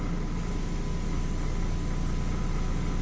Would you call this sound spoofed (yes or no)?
no